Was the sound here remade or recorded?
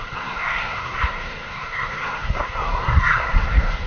remade